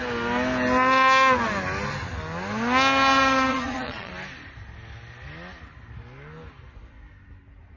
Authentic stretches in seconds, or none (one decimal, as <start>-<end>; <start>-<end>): 0.0-3.5; 4.1-7.8